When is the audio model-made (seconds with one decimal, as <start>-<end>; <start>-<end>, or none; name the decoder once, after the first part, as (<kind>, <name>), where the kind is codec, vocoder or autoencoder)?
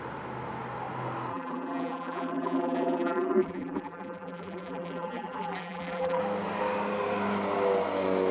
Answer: 1.3-6.2 (vocoder, BigVGAN v2)